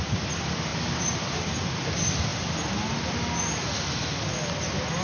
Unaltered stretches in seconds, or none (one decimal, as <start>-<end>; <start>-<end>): 0.0-5.0